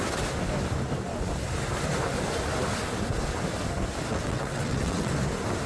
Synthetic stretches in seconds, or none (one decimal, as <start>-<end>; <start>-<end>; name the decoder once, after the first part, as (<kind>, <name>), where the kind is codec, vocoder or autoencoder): 4.1-5.1 (vocoder, WaveNeXt)